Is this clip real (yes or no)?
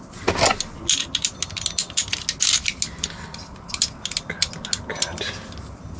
yes